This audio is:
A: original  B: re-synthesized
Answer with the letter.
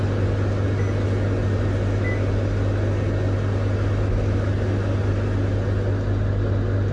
A